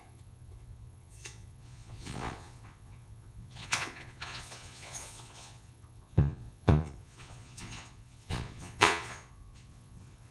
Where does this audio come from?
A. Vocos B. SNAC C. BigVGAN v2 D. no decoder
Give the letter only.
A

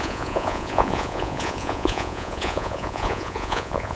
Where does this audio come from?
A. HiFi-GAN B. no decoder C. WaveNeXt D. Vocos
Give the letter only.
D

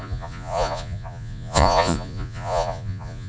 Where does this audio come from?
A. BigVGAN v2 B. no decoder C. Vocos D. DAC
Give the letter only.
C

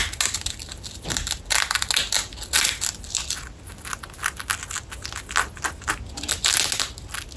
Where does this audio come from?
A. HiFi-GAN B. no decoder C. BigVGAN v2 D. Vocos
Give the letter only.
B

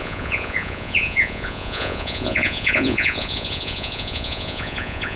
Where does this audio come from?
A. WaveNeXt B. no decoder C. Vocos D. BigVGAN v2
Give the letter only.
C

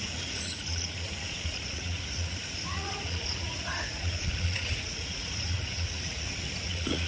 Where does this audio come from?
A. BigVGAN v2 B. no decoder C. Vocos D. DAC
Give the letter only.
C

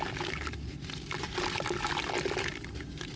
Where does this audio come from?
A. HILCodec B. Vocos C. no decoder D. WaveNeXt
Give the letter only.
C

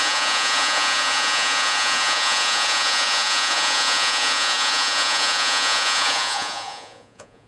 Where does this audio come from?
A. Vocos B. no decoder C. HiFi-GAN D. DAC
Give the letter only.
A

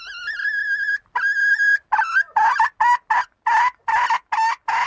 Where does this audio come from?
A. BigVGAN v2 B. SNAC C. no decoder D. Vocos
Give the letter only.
C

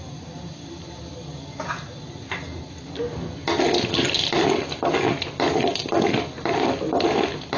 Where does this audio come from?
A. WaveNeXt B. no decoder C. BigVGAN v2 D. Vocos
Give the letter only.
B